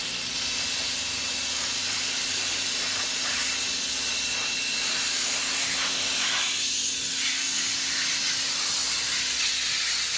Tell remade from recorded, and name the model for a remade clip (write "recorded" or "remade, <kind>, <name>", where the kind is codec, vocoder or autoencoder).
recorded